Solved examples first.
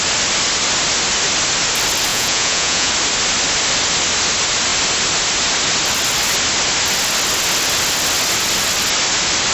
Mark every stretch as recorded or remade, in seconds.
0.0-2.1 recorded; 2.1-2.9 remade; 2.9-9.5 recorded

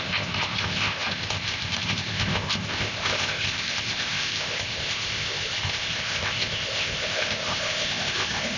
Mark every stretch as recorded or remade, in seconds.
0.0-8.6 remade